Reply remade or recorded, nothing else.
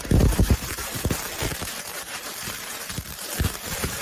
remade